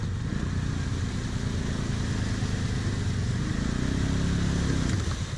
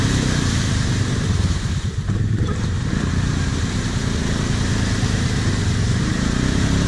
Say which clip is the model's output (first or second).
second